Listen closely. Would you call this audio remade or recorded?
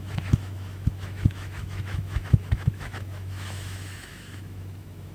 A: remade